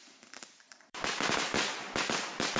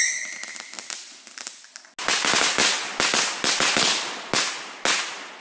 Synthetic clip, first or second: first